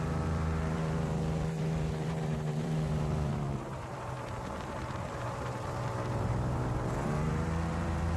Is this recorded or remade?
remade